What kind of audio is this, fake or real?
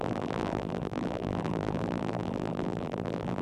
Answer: fake